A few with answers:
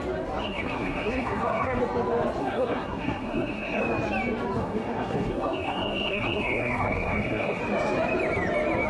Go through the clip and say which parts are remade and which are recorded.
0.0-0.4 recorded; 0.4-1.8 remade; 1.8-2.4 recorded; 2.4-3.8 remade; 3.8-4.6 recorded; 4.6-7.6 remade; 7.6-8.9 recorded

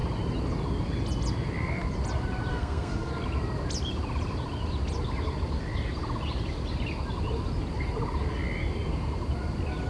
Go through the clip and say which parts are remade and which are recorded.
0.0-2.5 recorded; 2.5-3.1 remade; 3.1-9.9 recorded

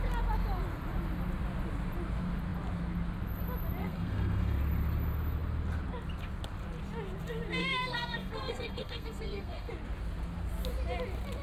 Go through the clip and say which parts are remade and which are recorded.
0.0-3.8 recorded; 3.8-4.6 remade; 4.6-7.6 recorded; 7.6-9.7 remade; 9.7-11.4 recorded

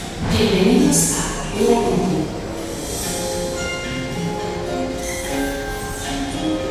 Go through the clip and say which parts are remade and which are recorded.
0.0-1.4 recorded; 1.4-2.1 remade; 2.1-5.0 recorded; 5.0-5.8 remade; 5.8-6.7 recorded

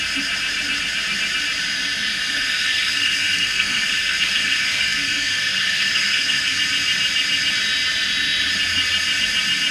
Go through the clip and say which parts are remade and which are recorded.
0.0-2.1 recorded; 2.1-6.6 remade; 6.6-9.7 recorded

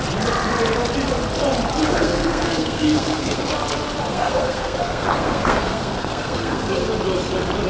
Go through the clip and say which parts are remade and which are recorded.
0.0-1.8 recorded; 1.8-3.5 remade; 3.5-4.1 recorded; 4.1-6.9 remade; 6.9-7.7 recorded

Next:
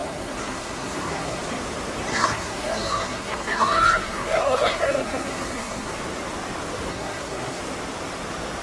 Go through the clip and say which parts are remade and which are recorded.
0.0-1.4 remade; 1.4-2.1 recorded; 2.1-5.9 remade; 5.9-6.9 recorded; 6.9-7.6 remade; 7.6-8.6 recorded

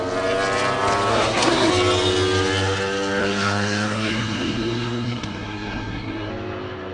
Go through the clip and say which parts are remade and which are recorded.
0.0-1.1 recorded; 1.1-1.7 remade; 1.7-3.2 recorded; 3.2-6.3 remade; 6.3-6.9 recorded